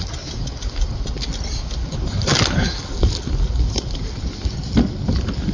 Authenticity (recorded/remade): recorded